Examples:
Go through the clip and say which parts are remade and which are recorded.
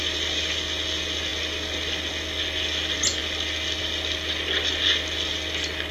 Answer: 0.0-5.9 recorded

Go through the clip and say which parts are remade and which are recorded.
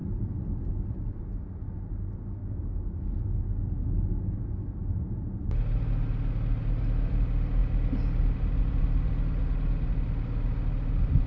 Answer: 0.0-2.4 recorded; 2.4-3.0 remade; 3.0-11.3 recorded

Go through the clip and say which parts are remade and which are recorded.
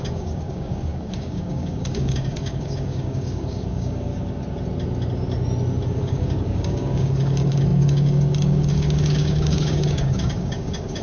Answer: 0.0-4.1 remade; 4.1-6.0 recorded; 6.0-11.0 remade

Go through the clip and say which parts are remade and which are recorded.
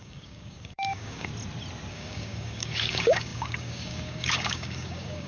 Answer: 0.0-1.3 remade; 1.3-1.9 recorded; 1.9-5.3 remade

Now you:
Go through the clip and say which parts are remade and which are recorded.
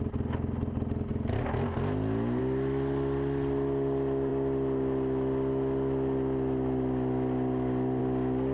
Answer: 0.0-8.5 recorded